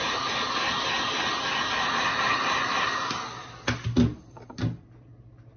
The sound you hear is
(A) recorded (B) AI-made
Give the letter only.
A